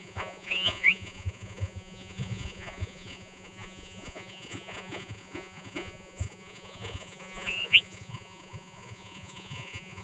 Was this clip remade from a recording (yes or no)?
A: yes